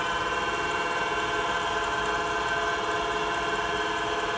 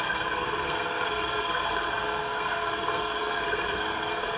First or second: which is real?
first